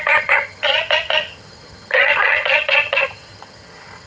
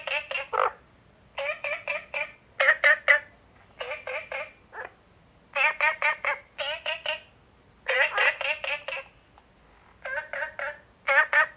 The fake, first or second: first